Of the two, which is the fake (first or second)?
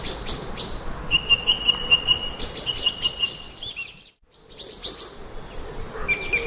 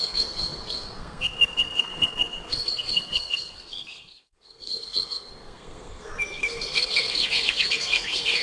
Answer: second